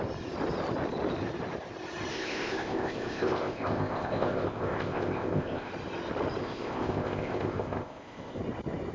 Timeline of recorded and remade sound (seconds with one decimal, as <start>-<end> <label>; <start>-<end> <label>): 0.0-2.1 recorded; 2.1-5.7 remade; 5.7-6.4 recorded; 6.4-8.4 remade; 8.4-8.9 recorded